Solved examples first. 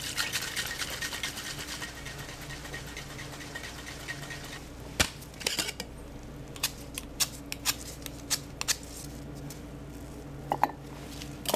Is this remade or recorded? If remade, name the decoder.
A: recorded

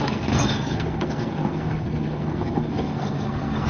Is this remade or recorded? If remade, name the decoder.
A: remade, codec, SNAC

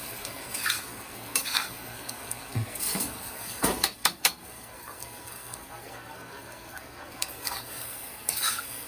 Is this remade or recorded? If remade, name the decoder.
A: remade, codec, SNAC